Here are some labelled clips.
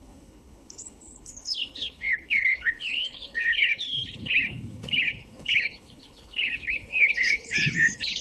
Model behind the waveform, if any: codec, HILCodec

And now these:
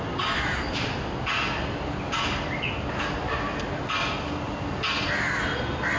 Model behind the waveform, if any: none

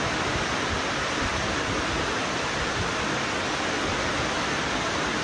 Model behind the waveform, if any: none